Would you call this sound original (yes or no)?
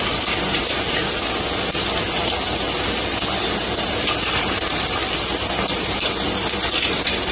yes